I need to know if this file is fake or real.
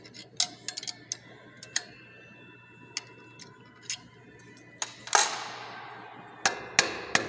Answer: real